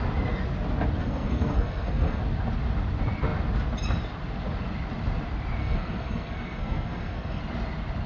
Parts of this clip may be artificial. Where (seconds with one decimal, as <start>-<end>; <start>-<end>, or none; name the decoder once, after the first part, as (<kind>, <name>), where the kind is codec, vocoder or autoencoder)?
1.0-2.2 (codec, SNAC); 5.6-7.4